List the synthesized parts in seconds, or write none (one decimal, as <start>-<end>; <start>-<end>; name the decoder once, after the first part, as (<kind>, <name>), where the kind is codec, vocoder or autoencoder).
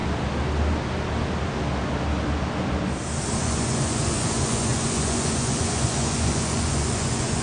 3.4-7.4 (vocoder, Vocos)